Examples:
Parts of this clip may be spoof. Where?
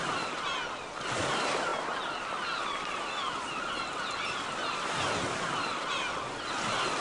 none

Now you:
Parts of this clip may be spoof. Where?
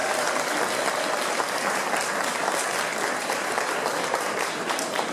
3.1-5.1 (vocoder, BigVGAN v2)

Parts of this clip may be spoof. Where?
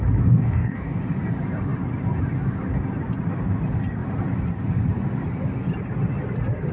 0.4-1.0 (codec, DAC)